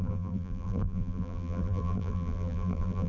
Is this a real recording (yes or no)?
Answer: no